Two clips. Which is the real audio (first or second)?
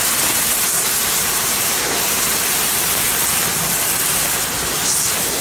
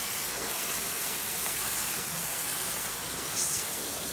first